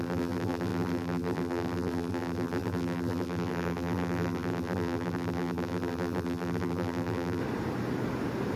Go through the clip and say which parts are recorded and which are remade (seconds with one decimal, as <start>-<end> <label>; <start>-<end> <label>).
0.0-7.4 remade; 7.4-8.6 recorded

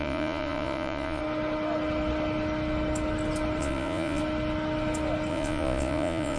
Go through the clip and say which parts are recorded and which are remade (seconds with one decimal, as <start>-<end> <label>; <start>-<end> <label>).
0.0-1.2 remade; 1.2-3.6 recorded; 3.6-4.2 remade; 4.2-5.3 recorded; 5.3-6.4 remade

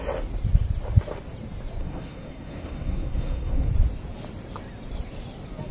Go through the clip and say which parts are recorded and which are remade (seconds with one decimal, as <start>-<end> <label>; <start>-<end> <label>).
0.0-1.8 recorded; 1.8-3.7 remade; 3.7-5.7 recorded

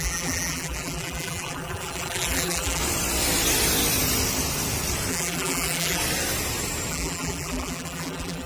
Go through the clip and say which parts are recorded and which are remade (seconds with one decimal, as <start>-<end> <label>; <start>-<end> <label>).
0.0-2.8 remade; 2.8-5.1 recorded; 5.1-6.0 remade; 6.0-6.9 recorded; 6.9-8.5 remade

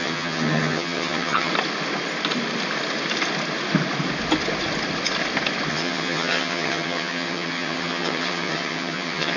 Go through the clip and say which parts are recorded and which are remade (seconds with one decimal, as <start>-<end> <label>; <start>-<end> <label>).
0.0-1.5 remade; 1.5-5.7 recorded; 5.7-9.4 remade

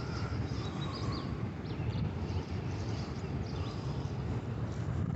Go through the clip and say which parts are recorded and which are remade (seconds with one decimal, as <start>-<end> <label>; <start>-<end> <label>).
0.0-5.2 recorded

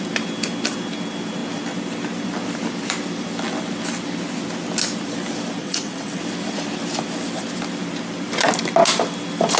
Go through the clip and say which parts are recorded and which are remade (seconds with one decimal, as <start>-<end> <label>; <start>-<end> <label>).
0.0-5.6 recorded; 5.6-6.2 remade; 6.2-9.6 recorded